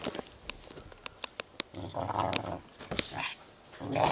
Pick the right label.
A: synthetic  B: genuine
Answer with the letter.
B